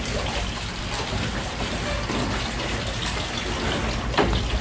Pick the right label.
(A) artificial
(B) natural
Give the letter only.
B